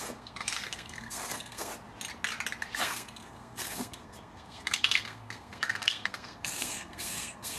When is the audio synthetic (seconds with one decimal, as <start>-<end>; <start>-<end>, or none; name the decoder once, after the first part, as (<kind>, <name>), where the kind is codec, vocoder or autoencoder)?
0.0-1.7 (codec, SNAC); 2.8-7.6